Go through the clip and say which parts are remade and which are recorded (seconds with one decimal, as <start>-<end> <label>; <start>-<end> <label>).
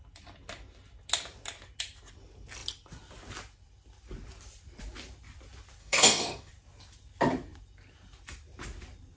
0.0-5.8 recorded; 5.8-6.5 remade; 6.5-9.2 recorded